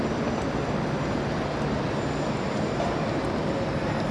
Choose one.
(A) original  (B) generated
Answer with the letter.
B